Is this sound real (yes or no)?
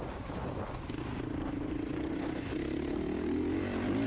yes